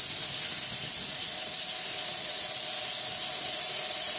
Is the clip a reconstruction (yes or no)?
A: no